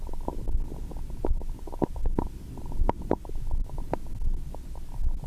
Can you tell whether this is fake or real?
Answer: real